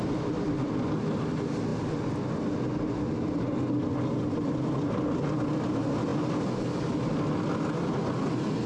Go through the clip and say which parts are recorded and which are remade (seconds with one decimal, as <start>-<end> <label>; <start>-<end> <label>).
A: 0.0-8.7 recorded